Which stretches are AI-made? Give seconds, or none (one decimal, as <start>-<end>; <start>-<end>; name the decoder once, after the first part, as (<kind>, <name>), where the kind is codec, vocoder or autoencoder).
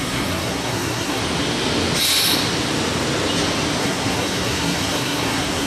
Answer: 0.0-1.2 (codec, SNAC); 3.8-5.7